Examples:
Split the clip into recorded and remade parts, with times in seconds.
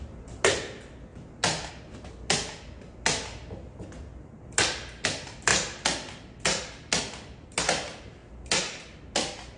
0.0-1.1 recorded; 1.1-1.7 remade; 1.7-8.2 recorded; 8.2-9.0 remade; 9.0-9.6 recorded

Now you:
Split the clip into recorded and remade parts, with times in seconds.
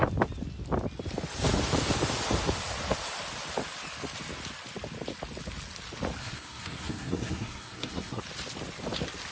0.0-6.2 recorded; 6.2-8.2 remade; 8.2-9.3 recorded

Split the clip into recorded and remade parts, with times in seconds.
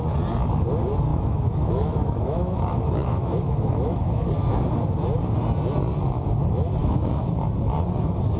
0.0-1.1 recorded; 1.1-4.3 remade; 4.3-6.8 recorded; 6.8-7.3 remade; 7.3-8.4 recorded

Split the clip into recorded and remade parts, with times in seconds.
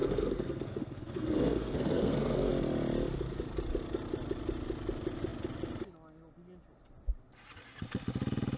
0.0-2.5 remade; 2.5-8.6 recorded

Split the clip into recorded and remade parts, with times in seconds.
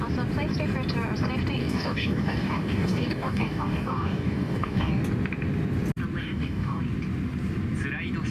0.0-1.6 recorded; 1.6-4.9 remade; 4.9-6.2 recorded; 6.2-6.8 remade; 6.8-8.3 recorded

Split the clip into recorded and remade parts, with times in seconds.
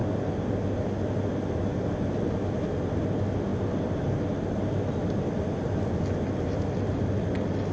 0.0-7.7 recorded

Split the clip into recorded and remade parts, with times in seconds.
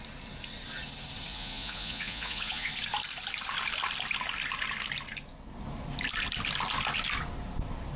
0.0-1.3 recorded; 1.3-2.7 remade; 2.7-8.0 recorded